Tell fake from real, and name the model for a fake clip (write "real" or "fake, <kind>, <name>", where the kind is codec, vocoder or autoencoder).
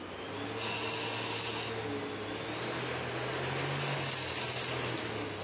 real